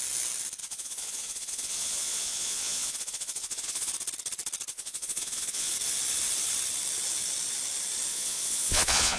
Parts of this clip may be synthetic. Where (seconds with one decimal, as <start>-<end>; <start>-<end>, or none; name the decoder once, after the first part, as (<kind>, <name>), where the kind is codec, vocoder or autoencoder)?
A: 0.6-3.9 (vocoder, Vocos); 4.7-5.7; 8.1-9.2